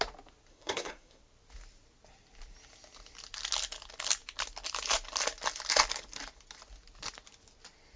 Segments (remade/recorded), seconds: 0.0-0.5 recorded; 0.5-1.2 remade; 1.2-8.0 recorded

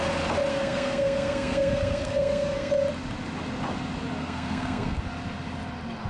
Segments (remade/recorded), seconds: 0.0-0.5 recorded; 0.5-2.7 remade; 2.7-4.2 recorded; 4.2-5.0 remade; 5.0-6.1 recorded

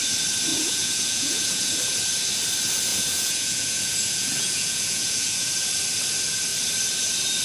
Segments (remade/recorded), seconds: 0.0-0.5 recorded; 0.5-1.8 remade; 1.8-2.9 recorded; 2.9-5.5 remade; 5.5-7.4 recorded